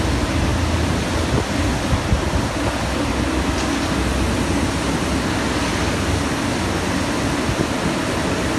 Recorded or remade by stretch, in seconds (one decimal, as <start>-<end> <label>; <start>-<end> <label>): 0.0-8.6 recorded